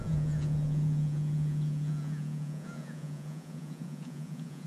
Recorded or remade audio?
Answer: remade